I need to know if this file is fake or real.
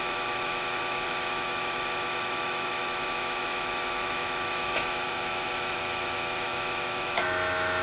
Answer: fake